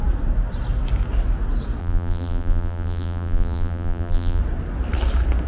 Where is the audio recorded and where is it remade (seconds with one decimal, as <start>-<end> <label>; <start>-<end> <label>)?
0.0-1.8 recorded; 1.8-4.4 remade; 4.4-5.5 recorded